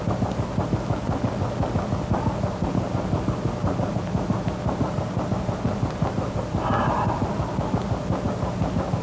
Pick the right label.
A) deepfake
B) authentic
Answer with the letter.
B